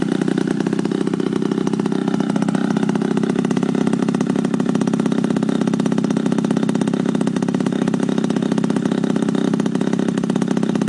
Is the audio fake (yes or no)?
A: no